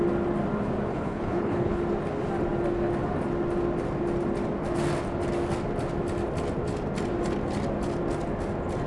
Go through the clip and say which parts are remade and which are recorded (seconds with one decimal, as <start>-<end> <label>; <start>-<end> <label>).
0.0-0.9 recorded; 0.9-1.8 remade; 1.8-8.9 recorded